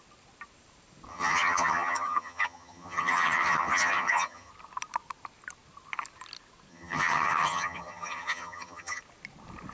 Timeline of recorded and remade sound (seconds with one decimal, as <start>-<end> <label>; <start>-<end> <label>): 0.0-1.1 recorded; 1.1-4.5 remade; 4.5-6.7 recorded; 6.7-9.0 remade; 9.0-9.7 recorded

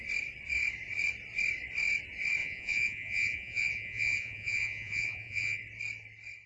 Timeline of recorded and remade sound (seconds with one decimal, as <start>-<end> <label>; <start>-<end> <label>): 0.0-2.4 recorded; 2.4-5.6 remade; 5.6-6.5 recorded